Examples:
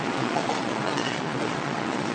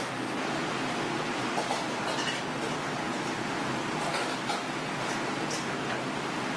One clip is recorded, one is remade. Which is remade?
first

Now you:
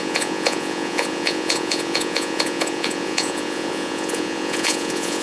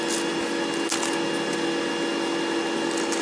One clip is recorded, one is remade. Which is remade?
first